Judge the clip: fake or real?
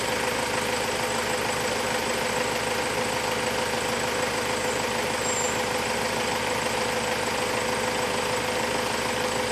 real